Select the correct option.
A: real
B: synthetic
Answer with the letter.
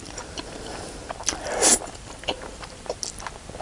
B